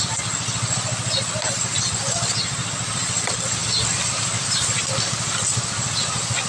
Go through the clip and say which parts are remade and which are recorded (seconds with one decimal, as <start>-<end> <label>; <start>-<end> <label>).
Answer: 0.0-6.5 recorded

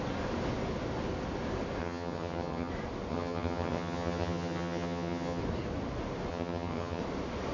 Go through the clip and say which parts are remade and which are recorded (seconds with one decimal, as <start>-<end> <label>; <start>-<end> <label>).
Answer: 0.0-1.8 recorded; 1.8-2.7 remade; 2.7-3.1 recorded; 3.1-5.4 remade; 5.4-6.3 recorded; 6.3-7.0 remade; 7.0-7.5 recorded

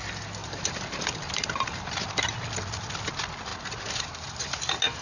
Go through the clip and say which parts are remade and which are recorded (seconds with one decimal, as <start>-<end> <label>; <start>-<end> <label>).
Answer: 0.0-0.4 recorded; 0.4-2.0 remade; 2.0-3.5 recorded; 3.5-4.6 remade; 4.6-5.0 recorded

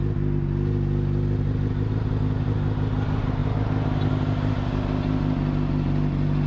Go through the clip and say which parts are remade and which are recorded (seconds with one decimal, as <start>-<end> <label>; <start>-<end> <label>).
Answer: 0.0-6.5 recorded